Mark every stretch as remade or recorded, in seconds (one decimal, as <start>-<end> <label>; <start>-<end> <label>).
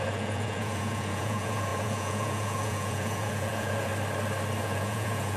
0.0-3.9 remade; 3.9-4.6 recorded; 4.6-5.4 remade